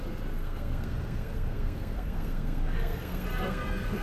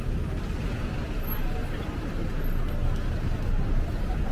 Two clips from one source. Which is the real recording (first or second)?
second